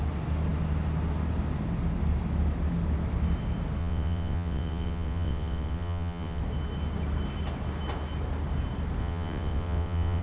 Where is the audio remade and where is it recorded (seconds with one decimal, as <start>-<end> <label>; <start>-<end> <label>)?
0.0-3.8 recorded; 3.8-6.4 remade; 6.4-9.0 recorded; 9.0-10.2 remade